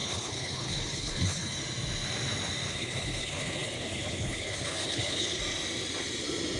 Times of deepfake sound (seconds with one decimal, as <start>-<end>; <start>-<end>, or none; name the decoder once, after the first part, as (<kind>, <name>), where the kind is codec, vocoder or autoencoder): 0.0-1.6 (codec, HILCodec); 2.7-5.4

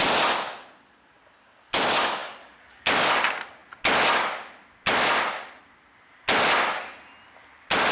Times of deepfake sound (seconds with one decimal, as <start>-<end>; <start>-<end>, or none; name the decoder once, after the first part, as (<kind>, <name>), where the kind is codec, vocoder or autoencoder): 2.2-3.2 (codec, DAC)

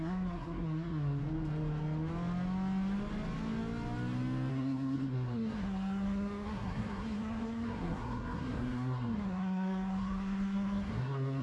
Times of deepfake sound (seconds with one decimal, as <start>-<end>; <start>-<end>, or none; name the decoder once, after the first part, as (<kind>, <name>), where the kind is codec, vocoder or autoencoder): 0.0-1.2 (codec, SNAC); 4.5-11.4

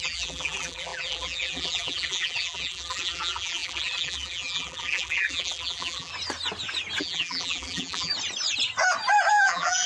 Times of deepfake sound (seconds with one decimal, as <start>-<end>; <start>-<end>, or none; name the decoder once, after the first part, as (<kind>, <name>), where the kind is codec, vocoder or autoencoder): 0.0-6.1 (vocoder, BigVGAN v2); 7.0-8.1; 9.3-9.9

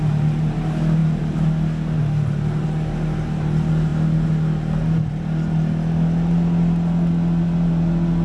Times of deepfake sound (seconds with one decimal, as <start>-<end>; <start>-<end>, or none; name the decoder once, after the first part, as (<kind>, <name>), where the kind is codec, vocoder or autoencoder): none

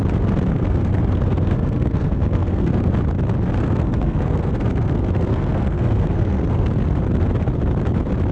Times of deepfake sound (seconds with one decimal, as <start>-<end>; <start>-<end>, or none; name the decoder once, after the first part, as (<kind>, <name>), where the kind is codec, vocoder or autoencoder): 0.5-2.9 (codec, SNAC); 3.6-6.7

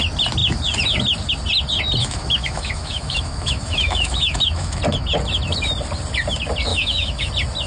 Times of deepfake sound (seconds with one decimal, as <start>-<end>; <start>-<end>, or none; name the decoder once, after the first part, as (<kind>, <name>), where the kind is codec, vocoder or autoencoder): 2.0-4.8 (autoencoder, DAC-VAE); 6.7-7.3

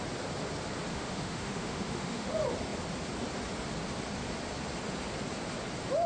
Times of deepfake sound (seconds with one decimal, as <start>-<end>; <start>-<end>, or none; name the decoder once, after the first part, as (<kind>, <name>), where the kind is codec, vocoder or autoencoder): 0.9-2.3 (autoencoder, DAC-VAE)